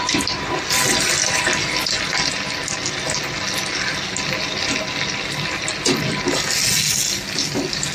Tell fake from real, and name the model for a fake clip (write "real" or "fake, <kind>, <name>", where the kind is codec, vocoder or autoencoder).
real